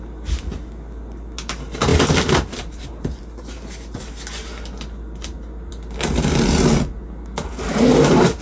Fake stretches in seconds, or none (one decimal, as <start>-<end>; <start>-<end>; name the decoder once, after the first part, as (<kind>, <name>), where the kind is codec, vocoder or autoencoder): none